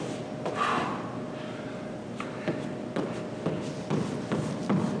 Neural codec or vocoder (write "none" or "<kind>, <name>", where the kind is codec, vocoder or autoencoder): none